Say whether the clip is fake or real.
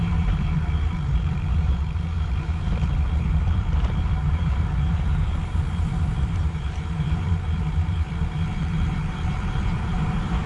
fake